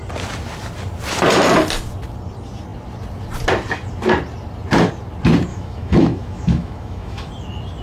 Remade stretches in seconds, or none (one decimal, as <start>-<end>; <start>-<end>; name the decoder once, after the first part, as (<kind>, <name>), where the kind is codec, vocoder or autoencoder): 5.5-7.3 (autoencoder, DAC-VAE)